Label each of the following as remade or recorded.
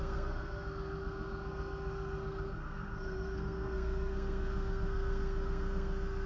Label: remade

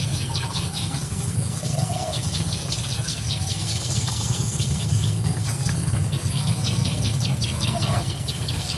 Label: remade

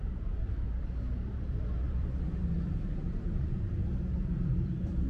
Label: remade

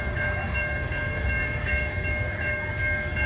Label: remade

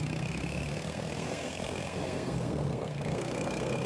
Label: remade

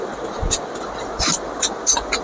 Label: recorded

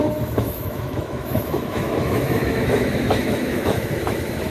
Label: remade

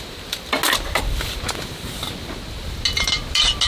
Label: recorded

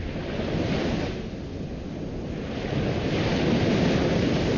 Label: recorded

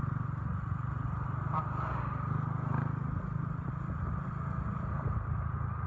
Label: recorded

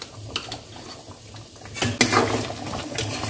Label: recorded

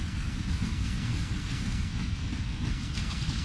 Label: remade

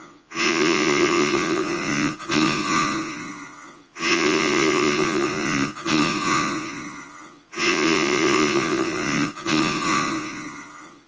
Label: remade